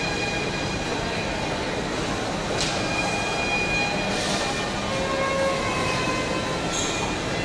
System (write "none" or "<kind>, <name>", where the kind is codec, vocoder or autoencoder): none